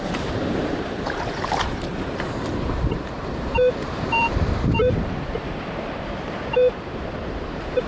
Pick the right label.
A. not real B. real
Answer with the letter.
A